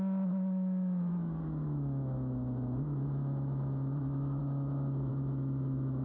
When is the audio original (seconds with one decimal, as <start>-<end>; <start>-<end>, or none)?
none